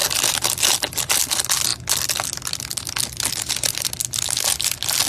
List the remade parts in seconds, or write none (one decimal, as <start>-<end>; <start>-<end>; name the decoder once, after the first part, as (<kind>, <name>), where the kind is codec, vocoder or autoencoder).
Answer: none